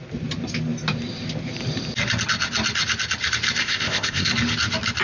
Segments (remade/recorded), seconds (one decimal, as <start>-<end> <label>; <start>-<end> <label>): 0.0-3.6 recorded; 3.6-4.3 remade; 4.3-5.0 recorded